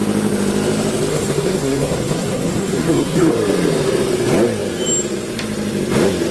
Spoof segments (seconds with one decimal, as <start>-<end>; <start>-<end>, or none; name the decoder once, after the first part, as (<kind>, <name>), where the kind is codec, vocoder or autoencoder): 1.1-3.3 (codec, SNAC)